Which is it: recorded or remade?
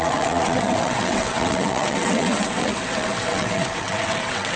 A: remade